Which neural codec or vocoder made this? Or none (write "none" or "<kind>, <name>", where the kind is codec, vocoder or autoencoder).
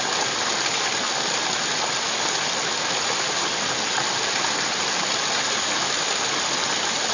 none